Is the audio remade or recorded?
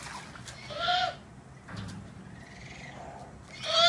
recorded